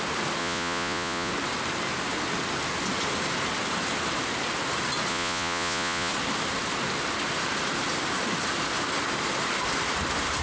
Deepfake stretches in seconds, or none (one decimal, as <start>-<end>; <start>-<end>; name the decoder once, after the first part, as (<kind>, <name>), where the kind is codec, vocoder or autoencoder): 0.4-1.3 (vocoder, Vocos); 5.1-6.1